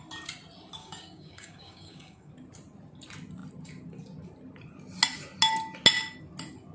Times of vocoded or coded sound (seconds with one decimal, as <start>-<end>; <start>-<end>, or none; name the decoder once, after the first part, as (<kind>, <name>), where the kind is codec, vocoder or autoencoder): 0.8-2.3 (codec, DAC)